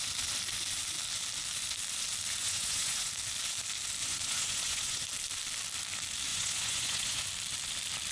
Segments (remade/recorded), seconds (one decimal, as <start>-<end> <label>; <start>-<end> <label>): 0.0-2.4 recorded; 2.4-3.1 remade; 3.1-4.0 recorded; 4.0-5.0 remade; 5.0-6.3 recorded; 6.3-7.2 remade; 7.2-8.1 recorded